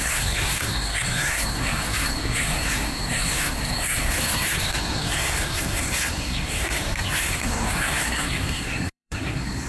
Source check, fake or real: fake